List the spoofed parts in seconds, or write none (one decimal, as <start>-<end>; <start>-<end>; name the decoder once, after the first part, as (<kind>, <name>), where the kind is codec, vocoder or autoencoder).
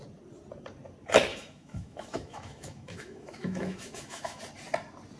1.3-4.4 (autoencoder, DAC-VAE)